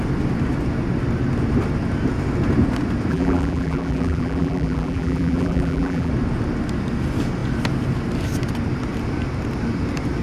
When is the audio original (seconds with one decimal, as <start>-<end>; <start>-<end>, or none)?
0.0-3.1; 6.1-10.2